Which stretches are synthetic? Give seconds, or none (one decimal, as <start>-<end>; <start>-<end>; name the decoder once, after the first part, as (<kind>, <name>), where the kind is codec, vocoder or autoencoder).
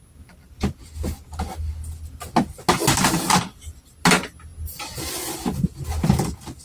none